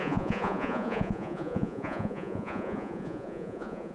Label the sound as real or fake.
fake